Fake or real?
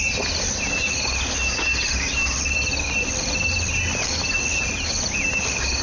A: real